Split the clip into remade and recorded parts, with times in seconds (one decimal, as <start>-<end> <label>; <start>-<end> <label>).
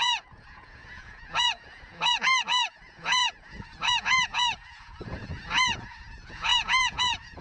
0.0-7.4 remade